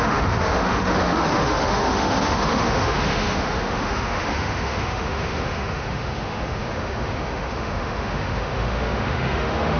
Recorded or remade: remade